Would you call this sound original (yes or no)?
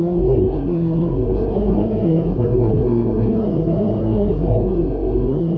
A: no